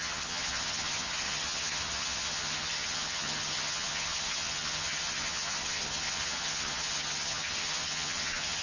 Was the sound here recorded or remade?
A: remade